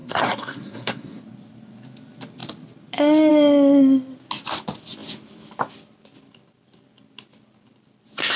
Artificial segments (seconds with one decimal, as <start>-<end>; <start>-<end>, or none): 0.0-1.2